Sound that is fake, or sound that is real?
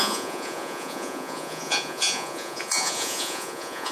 fake